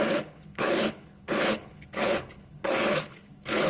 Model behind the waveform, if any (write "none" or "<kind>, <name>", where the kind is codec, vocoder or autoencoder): codec, HILCodec